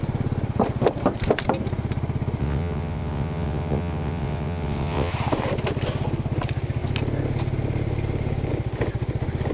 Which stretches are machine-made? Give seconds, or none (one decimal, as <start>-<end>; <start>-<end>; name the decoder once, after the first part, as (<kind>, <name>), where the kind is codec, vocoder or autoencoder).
2.4-5.1 (vocoder, WaveNeXt)